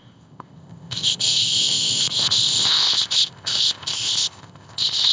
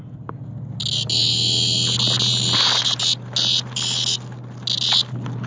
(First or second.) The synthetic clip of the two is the first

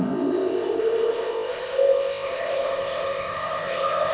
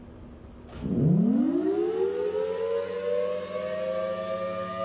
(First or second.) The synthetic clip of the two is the first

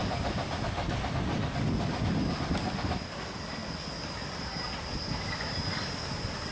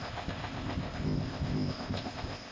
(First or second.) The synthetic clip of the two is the second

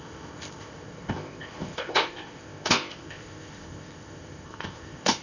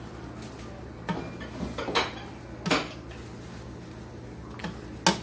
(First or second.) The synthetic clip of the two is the first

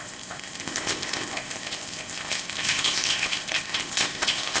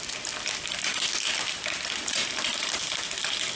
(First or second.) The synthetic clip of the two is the first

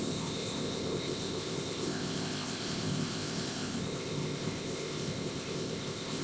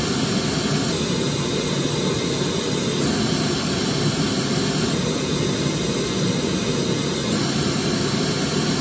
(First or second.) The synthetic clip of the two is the first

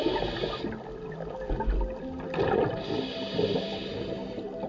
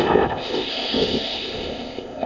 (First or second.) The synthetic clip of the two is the second